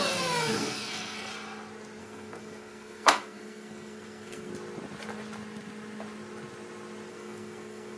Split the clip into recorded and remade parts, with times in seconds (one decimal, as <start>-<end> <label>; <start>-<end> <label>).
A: 0.0-1.3 remade; 1.3-2.0 recorded; 2.0-4.5 remade; 4.5-7.1 recorded; 7.1-8.0 remade